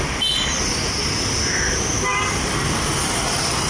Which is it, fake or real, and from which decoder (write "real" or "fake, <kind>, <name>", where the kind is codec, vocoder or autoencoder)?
real